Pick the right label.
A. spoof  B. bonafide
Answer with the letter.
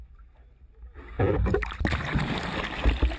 B